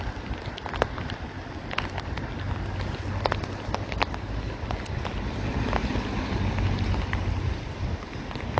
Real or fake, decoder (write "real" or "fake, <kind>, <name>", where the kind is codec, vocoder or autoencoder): real